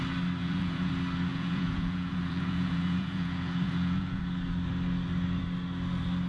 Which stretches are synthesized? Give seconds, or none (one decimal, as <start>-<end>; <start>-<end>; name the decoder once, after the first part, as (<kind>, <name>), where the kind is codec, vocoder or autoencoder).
0.4-0.9 (vocoder, Vocos); 1.3-4.2